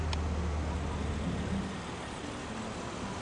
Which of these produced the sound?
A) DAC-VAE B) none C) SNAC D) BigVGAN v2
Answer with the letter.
B